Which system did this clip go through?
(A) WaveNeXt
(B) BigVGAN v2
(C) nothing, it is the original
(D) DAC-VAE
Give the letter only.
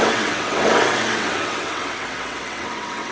A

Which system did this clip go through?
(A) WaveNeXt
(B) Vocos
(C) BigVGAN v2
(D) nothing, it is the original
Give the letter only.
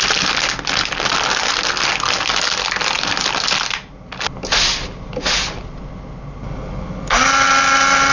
D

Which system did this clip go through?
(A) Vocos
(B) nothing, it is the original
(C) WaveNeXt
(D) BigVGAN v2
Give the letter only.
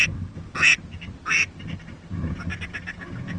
B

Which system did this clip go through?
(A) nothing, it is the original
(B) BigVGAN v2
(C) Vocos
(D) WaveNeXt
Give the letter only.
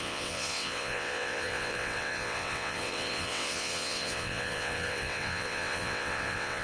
D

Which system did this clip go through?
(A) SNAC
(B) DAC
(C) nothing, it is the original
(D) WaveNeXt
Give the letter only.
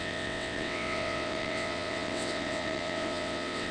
D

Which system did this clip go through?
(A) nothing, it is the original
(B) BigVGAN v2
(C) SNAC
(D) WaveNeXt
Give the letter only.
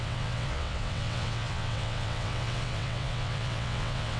D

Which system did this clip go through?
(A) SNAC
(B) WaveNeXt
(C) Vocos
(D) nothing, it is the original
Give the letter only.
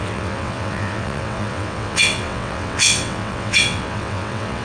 B